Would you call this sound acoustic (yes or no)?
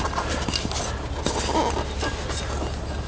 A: yes